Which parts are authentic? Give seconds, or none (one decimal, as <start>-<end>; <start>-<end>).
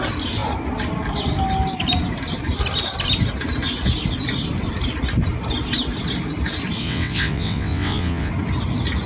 0.0-6.8; 8.3-9.1